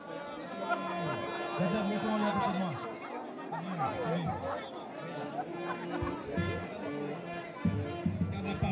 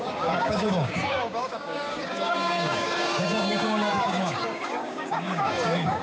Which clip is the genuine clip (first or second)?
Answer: first